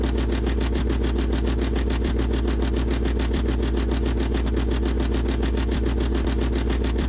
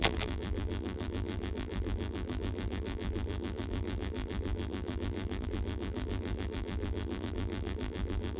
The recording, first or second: first